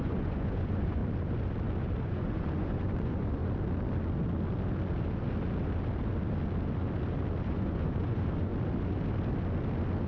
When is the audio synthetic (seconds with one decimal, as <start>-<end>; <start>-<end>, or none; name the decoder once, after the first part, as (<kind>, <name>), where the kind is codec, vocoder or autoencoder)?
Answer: 0.0-1.0 (vocoder, Vocos); 2.0-3.4; 7.5-8.5